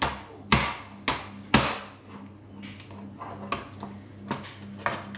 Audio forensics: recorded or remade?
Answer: recorded